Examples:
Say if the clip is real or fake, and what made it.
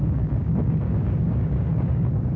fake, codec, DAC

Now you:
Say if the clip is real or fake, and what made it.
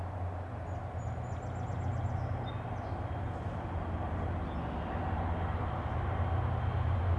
real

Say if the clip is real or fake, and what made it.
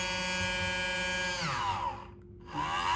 real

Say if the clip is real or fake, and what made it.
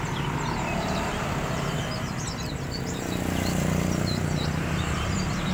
fake, vocoder, BigVGAN v2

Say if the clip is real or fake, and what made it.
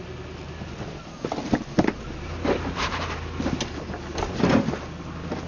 real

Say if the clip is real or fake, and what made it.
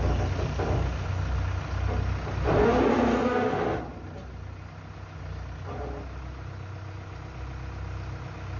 real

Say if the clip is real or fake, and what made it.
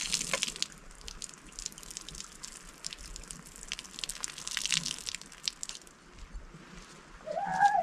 real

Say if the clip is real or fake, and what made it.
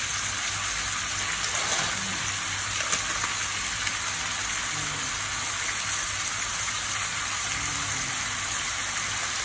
real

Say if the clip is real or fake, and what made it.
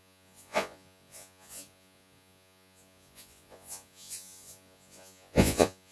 fake, vocoder, Vocos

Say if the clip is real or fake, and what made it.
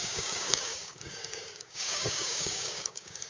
fake, codec, DAC